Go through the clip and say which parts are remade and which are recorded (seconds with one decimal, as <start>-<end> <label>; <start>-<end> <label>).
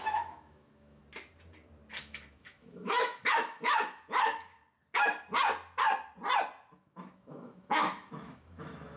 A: 0.0-1.0 remade; 1.0-2.0 recorded; 2.0-4.6 remade; 4.6-6.7 recorded; 6.7-9.0 remade